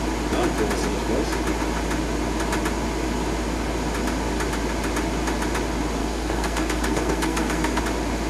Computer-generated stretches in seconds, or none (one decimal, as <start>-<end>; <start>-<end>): 6.0-7.8